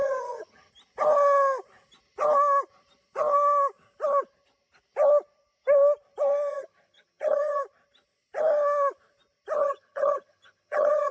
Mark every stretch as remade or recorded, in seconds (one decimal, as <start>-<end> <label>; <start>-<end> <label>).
0.0-0.7 remade; 0.7-6.5 recorded; 6.5-7.6 remade; 7.6-9.6 recorded; 9.6-11.1 remade